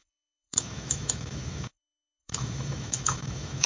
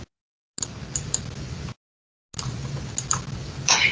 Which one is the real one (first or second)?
second